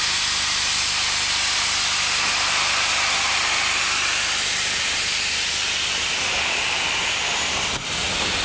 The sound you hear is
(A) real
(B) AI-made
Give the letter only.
B